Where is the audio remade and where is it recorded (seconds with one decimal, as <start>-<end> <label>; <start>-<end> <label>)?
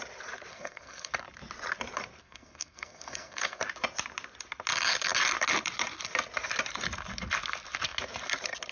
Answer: 0.0-0.5 recorded; 0.5-1.1 remade; 1.1-2.2 recorded; 2.2-3.6 remade; 3.6-8.7 recorded